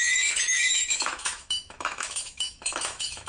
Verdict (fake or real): fake